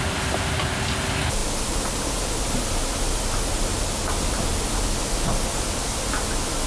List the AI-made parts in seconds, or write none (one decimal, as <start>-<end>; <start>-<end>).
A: none